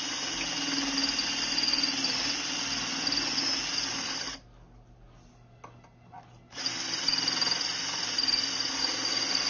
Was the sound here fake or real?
real